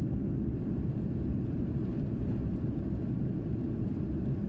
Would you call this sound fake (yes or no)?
no